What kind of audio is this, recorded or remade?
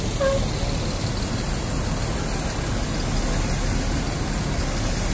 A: recorded